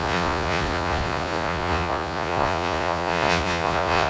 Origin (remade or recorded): remade